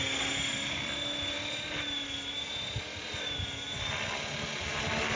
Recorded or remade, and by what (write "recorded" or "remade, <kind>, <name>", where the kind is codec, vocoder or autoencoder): recorded